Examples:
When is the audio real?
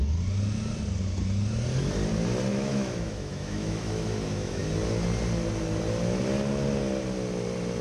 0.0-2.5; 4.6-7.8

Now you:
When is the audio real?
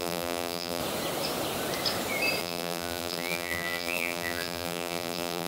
0.8-2.4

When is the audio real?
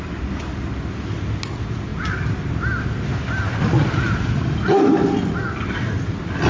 0.0-6.5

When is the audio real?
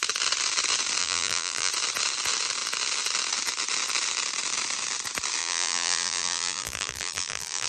0.0-1.0; 1.7-5.4